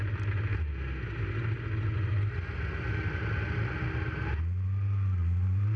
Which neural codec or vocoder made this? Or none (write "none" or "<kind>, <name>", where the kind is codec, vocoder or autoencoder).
none